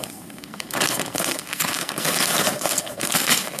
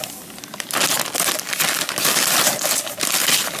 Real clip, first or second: second